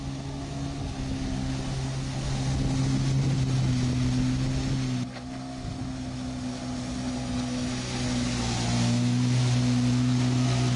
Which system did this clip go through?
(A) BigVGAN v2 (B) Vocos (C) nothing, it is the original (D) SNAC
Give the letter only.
C